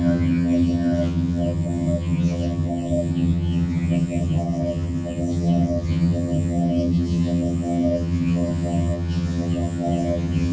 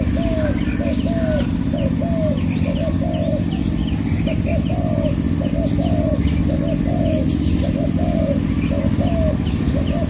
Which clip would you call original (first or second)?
second